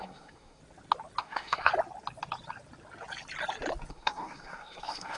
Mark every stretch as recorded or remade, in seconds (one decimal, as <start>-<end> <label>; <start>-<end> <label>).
0.0-0.6 remade; 0.6-1.2 recorded; 1.2-1.7 remade; 1.7-3.9 recorded; 3.9-5.2 remade